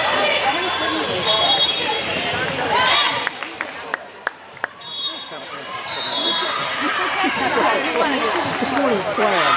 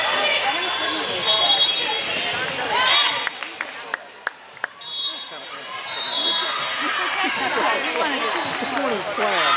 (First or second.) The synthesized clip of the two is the first